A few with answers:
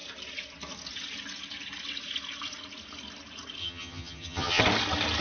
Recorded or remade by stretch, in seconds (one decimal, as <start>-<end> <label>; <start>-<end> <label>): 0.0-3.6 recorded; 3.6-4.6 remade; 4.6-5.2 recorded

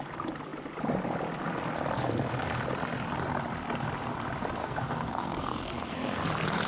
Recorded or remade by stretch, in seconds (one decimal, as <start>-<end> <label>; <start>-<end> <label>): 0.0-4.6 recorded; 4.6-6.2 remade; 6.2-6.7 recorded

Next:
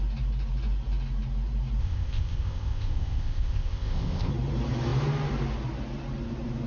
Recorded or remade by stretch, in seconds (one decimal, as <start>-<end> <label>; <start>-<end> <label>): 0.0-1.8 recorded; 1.8-4.3 remade; 4.3-6.7 recorded